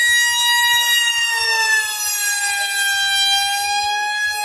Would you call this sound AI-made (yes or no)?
no